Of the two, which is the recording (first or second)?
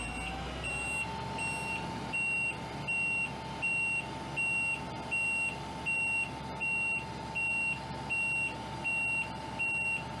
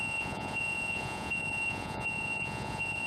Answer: first